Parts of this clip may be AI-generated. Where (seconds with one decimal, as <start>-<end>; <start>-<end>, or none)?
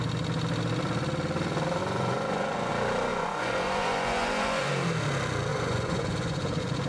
1.8-2.7; 3.1-4.7; 5.5-6.9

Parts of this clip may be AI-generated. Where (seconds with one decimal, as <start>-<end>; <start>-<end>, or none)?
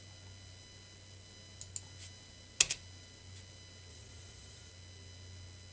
3.9-4.7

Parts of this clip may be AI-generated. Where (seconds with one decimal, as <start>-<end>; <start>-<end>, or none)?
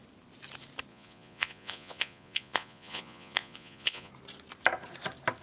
0.9-4.1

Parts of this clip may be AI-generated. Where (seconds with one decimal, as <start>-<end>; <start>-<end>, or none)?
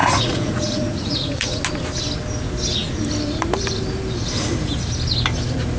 0.0-1.6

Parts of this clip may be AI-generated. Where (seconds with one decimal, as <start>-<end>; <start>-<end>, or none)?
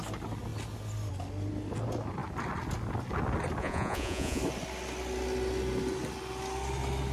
3.6-4.4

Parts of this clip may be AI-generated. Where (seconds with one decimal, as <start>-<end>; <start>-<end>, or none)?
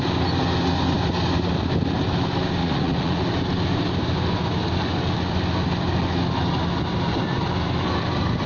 2.6-3.2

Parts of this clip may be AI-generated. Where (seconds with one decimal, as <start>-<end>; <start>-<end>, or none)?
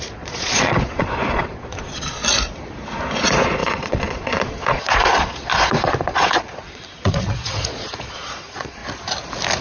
0.0-2.2; 3.1-8.8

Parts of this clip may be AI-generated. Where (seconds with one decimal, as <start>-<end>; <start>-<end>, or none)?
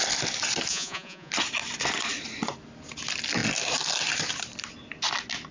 0.7-1.3